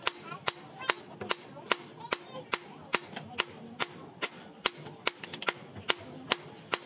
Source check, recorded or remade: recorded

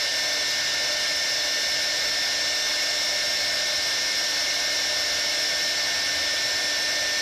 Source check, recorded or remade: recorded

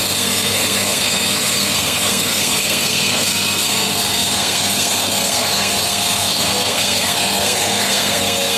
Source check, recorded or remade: remade